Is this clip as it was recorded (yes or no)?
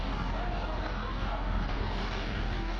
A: no